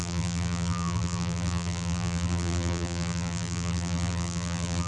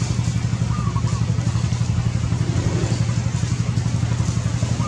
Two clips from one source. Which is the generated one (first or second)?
first